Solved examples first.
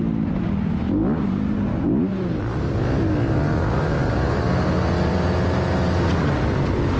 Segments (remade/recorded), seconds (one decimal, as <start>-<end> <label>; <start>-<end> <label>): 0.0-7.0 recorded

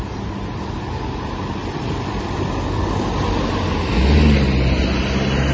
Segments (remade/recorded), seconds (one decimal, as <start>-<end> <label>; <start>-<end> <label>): 0.0-1.6 recorded; 1.6-3.5 remade; 3.5-5.5 recorded

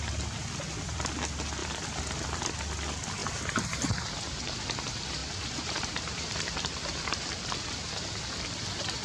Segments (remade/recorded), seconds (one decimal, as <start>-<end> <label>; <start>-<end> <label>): 0.0-1.6 recorded; 1.6-2.4 remade; 2.4-3.2 recorded; 3.2-4.6 remade; 4.6-5.2 recorded; 5.2-7.5 remade; 7.5-9.0 recorded

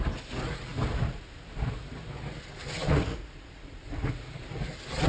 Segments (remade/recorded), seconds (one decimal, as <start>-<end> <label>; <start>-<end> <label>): 0.0-2.8 recorded; 2.8-4.6 remade; 4.6-5.1 recorded

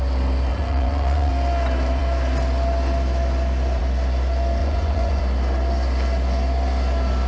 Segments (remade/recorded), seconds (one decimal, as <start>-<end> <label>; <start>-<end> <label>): 0.0-0.5 recorded; 0.5-1.3 remade; 1.3-4.6 recorded; 4.6-5.2 remade; 5.2-7.3 recorded

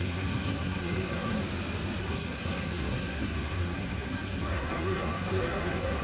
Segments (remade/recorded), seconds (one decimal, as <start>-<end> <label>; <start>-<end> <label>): 0.0-1.4 remade; 1.4-2.0 recorded; 2.0-6.0 remade

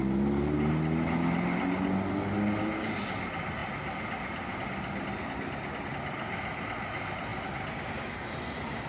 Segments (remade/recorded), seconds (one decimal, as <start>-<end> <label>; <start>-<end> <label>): 0.0-8.9 recorded

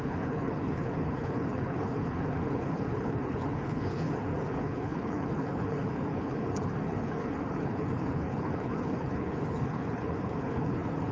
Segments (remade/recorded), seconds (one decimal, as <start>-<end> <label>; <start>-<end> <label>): 0.0-11.1 remade